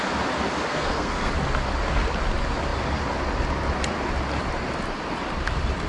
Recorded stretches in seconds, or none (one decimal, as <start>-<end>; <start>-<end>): 0.0-0.7; 1.3-5.9